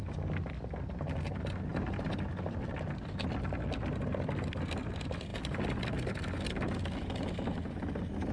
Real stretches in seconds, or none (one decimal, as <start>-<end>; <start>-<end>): 0.0-8.3